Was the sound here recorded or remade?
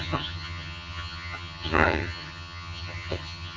remade